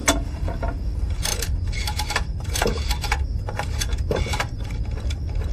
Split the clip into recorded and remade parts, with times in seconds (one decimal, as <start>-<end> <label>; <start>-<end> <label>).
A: 0.0-0.5 remade; 0.5-1.3 recorded; 1.3-4.6 remade; 4.6-5.5 recorded